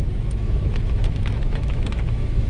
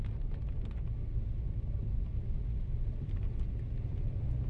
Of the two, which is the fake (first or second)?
first